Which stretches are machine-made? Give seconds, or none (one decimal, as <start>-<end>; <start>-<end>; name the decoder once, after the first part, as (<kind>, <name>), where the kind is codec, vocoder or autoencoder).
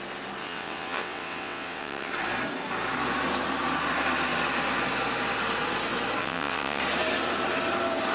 0.4-2.1 (vocoder, WaveNeXt); 6.2-6.8